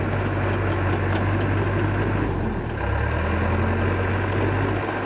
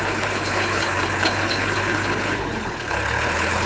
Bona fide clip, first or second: first